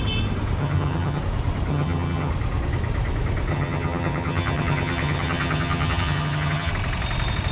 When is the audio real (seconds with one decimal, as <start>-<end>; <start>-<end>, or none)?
0.0-0.6; 1.2-1.7; 2.3-3.5; 6.7-7.5